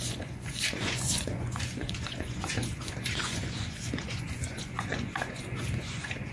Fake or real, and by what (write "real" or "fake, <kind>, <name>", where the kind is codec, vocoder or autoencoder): fake, vocoder, Vocos